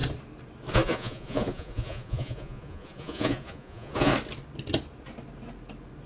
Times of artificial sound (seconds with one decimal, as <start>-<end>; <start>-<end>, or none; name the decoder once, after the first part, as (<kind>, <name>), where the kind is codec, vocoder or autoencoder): 0.7-4.1 (vocoder, Vocos)